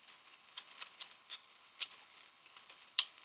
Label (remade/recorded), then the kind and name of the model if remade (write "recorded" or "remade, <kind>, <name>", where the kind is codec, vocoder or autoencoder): remade, codec, HILCodec